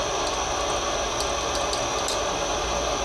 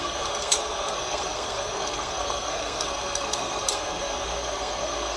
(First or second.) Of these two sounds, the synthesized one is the second